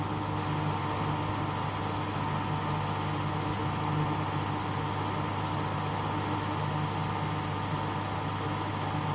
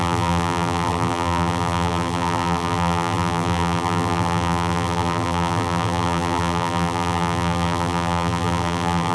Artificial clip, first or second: second